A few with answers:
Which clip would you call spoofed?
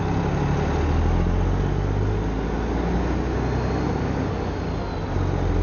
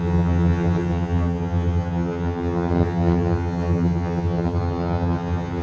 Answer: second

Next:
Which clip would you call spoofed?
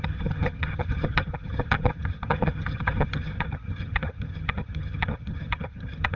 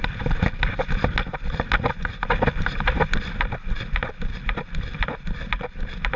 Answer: first